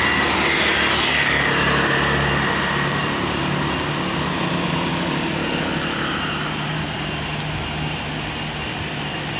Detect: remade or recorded recorded